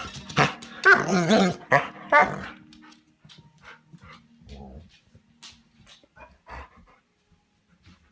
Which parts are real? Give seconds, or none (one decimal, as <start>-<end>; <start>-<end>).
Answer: 0.0-1.1; 1.7-8.1